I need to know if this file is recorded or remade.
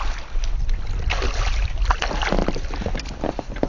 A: recorded